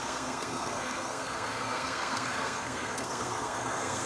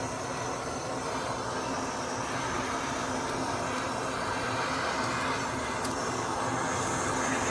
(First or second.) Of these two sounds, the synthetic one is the first